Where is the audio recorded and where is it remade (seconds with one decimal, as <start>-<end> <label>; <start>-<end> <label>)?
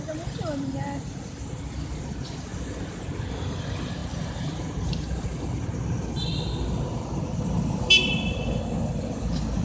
0.0-4.0 recorded; 4.0-5.8 remade; 5.8-9.6 recorded